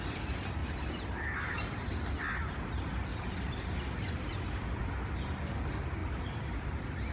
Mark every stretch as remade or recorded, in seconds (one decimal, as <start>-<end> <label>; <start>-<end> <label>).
0.0-3.1 recorded; 3.1-4.8 remade; 4.8-6.0 recorded; 6.0-6.6 remade; 6.6-7.1 recorded